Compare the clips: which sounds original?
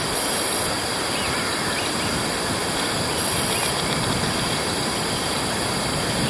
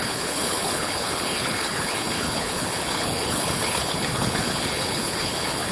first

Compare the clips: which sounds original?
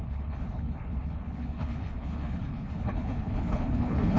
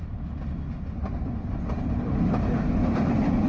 second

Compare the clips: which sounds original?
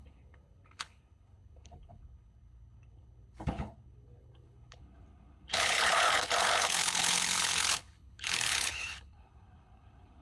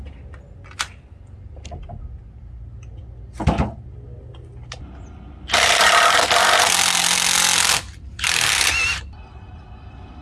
second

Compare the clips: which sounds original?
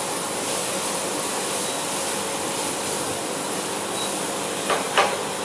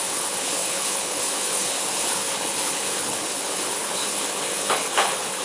first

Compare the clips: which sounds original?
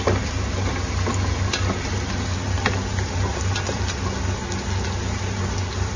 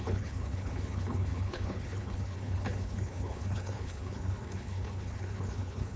first